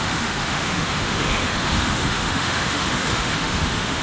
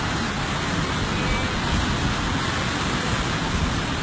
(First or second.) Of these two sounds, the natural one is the second